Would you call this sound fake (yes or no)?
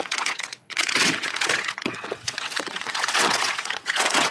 yes